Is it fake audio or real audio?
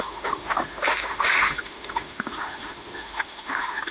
fake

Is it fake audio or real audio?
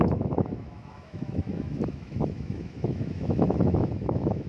fake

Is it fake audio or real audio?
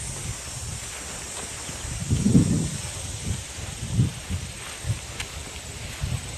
real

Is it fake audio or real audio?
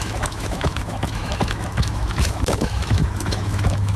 fake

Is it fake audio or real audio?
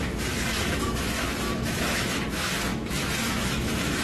fake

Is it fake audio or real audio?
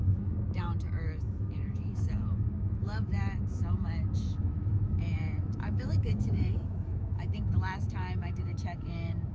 fake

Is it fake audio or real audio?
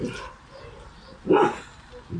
real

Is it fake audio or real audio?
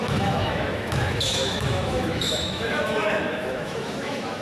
fake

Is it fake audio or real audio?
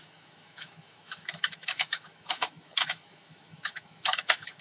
fake